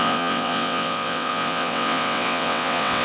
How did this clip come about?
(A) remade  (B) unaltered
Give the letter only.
A